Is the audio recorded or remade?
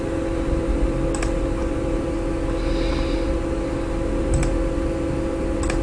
recorded